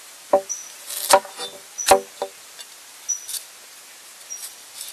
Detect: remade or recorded recorded